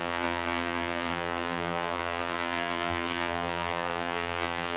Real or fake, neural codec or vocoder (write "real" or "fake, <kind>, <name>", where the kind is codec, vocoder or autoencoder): fake, vocoder, BigVGAN v2